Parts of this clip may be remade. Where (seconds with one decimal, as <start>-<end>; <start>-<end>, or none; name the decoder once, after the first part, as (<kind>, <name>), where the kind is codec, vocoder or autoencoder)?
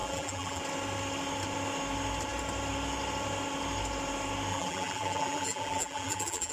0.0-0.6 (vocoder, BigVGAN v2); 4.5-6.5